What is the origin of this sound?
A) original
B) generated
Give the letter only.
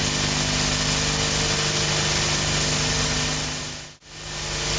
A